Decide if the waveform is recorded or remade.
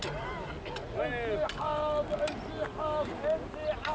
recorded